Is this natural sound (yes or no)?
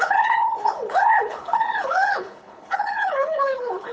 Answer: no